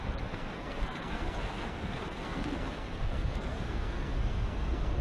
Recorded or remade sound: remade